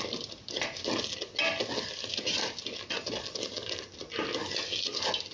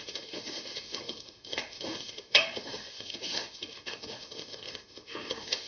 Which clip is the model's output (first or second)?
second